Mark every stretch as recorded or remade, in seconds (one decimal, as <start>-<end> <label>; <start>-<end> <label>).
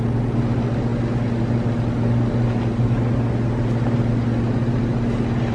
0.0-5.5 recorded